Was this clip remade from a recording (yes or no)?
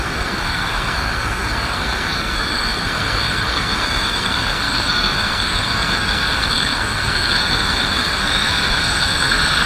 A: yes